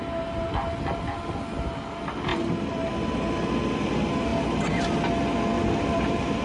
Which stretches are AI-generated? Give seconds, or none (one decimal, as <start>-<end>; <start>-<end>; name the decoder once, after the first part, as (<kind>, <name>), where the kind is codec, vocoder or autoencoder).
none